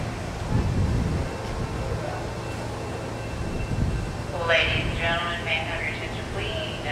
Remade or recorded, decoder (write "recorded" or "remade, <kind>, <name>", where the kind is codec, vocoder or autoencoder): recorded